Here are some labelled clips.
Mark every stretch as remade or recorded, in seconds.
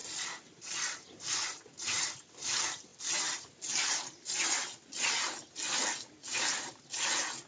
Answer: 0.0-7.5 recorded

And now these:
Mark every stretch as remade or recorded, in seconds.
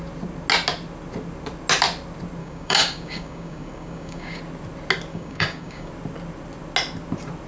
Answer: 0.0-2.4 recorded; 2.4-4.4 remade; 4.4-5.1 recorded; 5.1-5.9 remade; 5.9-7.5 recorded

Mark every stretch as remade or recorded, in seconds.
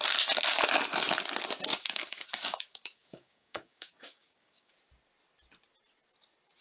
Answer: 0.0-1.7 recorded; 1.7-4.7 remade; 4.7-6.6 recorded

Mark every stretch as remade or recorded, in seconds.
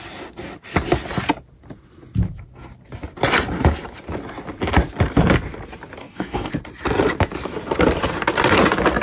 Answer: 0.0-6.0 recorded; 6.0-6.5 remade; 6.5-9.0 recorded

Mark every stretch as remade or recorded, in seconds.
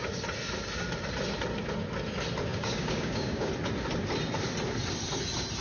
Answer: 0.0-2.5 recorded; 2.5-3.5 remade; 3.5-5.6 recorded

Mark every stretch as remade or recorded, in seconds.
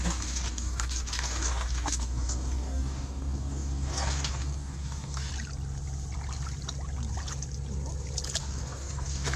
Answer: 0.0-5.3 remade; 5.3-8.4 recorded; 8.4-9.4 remade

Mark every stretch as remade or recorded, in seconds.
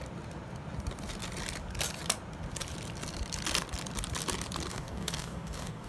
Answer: 0.0-4.7 recorded; 4.7-5.9 remade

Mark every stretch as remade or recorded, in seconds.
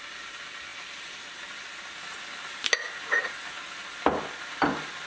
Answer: 0.0-5.1 recorded